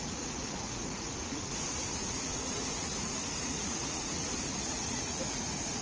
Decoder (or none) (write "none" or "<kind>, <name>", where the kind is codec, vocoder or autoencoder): vocoder, Vocos